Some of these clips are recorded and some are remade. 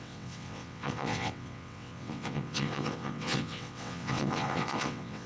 remade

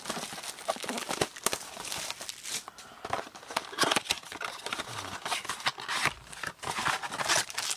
recorded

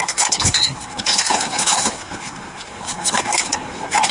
remade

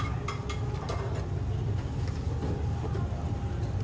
recorded